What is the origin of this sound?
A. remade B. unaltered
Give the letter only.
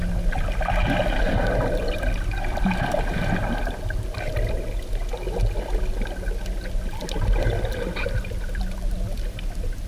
B